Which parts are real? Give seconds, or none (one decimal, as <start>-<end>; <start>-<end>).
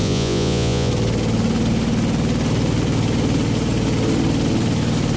0.9-5.2